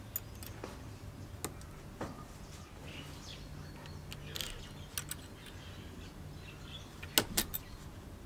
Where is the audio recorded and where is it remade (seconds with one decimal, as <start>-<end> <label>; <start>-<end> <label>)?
0.0-8.3 recorded